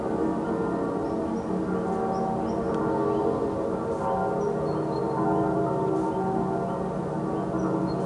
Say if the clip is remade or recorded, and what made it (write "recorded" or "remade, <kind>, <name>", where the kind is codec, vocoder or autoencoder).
recorded